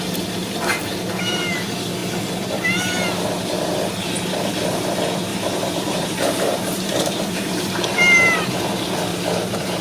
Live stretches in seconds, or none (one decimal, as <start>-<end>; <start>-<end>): 0.0-0.7; 1.4-5.3; 8.7-9.1